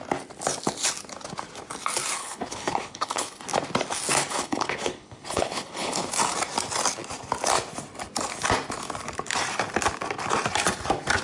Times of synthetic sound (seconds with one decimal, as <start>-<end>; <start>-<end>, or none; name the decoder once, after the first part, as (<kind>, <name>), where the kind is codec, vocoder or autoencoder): 2.2-3.4 (codec, HILCodec); 4.3-6.1